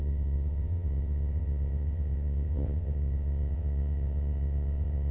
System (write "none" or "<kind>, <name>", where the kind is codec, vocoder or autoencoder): vocoder, WaveNeXt